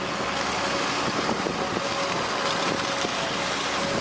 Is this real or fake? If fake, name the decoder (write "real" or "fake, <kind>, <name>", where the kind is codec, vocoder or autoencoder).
real